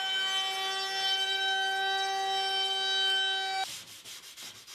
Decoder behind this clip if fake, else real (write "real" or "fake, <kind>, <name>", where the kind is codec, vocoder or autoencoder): real